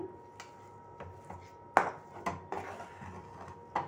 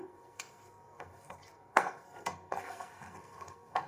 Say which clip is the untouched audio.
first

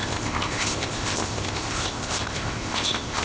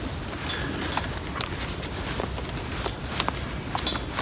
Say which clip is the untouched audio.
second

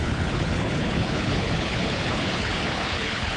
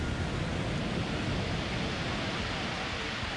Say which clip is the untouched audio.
second